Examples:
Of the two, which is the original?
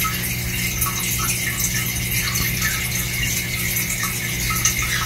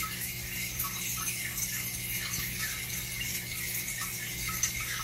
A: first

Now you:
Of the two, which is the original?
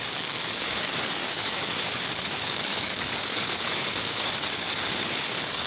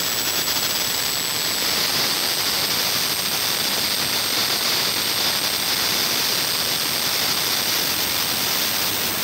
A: second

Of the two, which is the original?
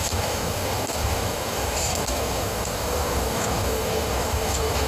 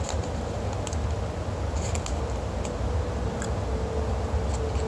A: second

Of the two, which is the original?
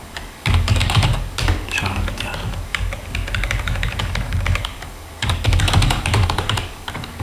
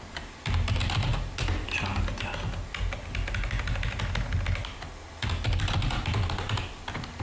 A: second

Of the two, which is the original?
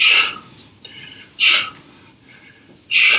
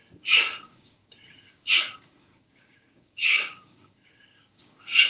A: first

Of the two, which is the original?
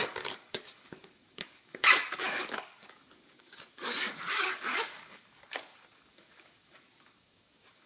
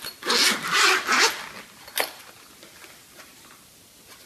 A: second